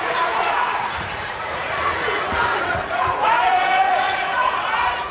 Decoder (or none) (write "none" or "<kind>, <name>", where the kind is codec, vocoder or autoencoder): vocoder, Vocos